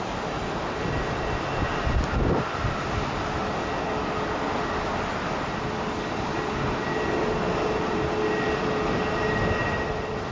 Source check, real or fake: real